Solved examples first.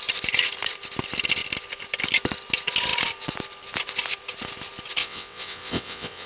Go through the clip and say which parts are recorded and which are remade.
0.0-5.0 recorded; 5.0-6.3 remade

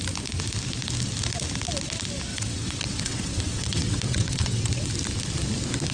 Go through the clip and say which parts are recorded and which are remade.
0.0-2.3 recorded; 2.3-4.9 remade; 4.9-5.9 recorded